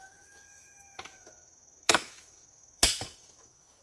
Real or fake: fake